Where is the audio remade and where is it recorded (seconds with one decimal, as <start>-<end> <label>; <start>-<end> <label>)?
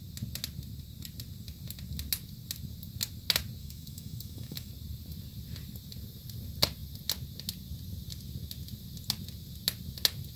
0.0-3.6 recorded; 3.6-4.7 remade; 4.7-10.4 recorded